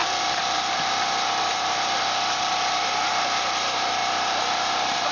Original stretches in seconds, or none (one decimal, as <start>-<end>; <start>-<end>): 3.1-4.0

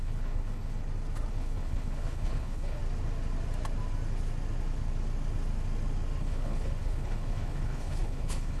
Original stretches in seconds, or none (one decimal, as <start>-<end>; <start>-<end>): 0.8-1.3; 2.8-6.2

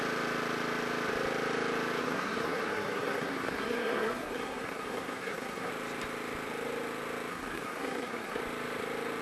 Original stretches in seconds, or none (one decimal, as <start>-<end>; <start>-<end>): 0.0-2.0; 5.7-7.3; 8.4-9.2

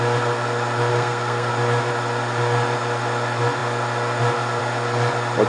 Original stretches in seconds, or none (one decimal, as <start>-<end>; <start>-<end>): 0.0-0.9; 1.5-5.5

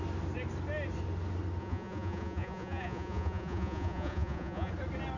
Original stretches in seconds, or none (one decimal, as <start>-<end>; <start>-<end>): 0.0-1.6; 4.7-5.2

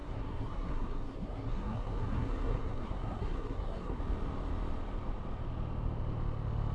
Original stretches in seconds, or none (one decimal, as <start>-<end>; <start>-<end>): 4.0-6.7